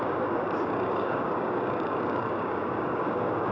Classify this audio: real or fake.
fake